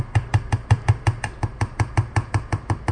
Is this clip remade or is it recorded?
recorded